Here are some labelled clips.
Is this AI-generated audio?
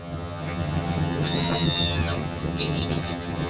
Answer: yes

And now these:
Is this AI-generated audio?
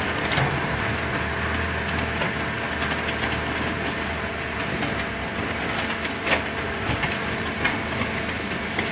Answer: no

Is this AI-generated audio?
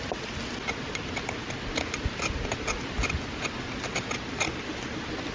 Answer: no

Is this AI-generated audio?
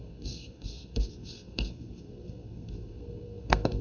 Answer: yes